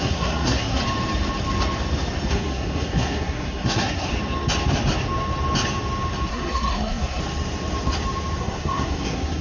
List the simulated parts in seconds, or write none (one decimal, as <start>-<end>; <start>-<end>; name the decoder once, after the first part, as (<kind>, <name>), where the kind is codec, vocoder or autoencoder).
0.0-0.8 (codec, SNAC); 2.3-4.1; 6.3-7.2; 8.4-9.4